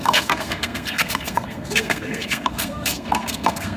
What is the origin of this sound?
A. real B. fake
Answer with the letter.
B